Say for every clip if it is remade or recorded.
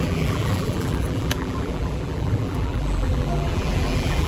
remade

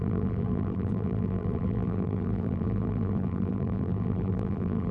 remade